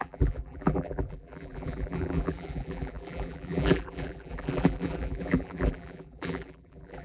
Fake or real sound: fake